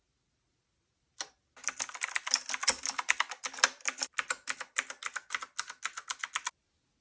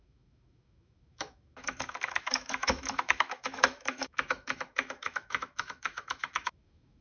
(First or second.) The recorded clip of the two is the first